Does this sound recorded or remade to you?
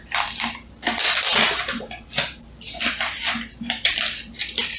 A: remade